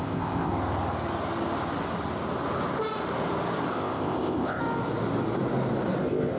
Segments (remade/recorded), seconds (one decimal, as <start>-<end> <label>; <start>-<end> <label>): 0.0-0.5 remade; 0.5-3.7 recorded; 3.7-4.6 remade; 4.6-6.0 recorded; 6.0-6.4 remade

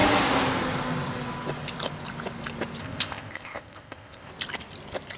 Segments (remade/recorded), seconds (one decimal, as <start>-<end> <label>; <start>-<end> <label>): 0.0-2.8 recorded; 2.8-4.3 remade; 4.3-5.2 recorded

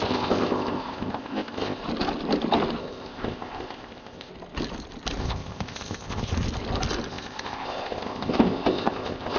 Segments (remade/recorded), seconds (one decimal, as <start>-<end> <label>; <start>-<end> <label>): 0.0-1.8 remade; 1.8-2.8 recorded; 2.8-4.3 remade; 4.3-5.2 recorded; 5.2-6.3 remade; 6.3-7.1 recorded; 7.1-9.4 remade

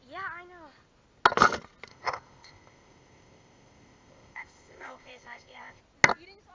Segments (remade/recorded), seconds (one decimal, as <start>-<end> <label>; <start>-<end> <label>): 0.0-1.9 recorded; 1.9-5.8 remade; 5.8-6.5 recorded

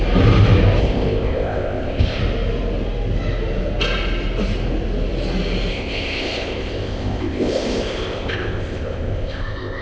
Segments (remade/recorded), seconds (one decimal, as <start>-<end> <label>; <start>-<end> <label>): 0.0-0.8 recorded; 0.8-2.2 remade; 2.2-5.7 recorded; 5.7-9.8 remade

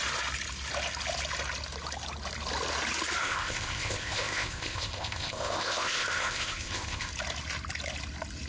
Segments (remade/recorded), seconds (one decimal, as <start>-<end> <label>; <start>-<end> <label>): 0.0-3.2 recorded; 3.2-7.1 remade; 7.1-8.5 recorded